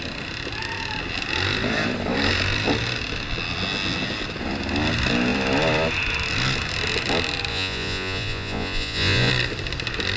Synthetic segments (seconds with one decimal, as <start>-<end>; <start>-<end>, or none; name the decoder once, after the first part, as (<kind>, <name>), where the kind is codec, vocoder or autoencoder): 7.5-9.3 (vocoder, Vocos)